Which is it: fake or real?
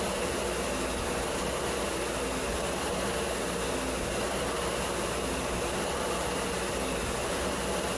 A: real